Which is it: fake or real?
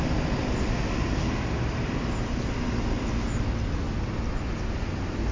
real